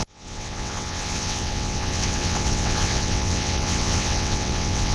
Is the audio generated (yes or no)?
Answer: yes